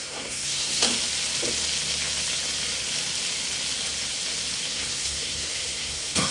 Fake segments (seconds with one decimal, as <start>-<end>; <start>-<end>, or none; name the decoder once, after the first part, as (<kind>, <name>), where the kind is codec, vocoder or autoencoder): 0.0-0.9 (codec, SNAC); 4.7-6.3